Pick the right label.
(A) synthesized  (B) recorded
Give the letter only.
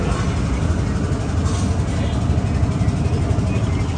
B